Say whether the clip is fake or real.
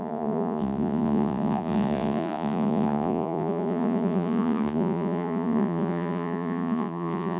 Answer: fake